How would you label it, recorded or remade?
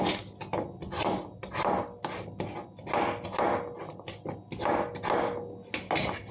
recorded